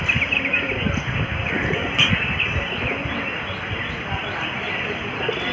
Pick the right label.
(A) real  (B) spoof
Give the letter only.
A